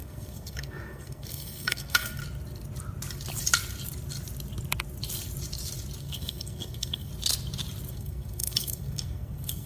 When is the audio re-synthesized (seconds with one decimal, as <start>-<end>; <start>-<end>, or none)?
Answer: 0.0-2.2; 6.0-7.1; 7.9-9.7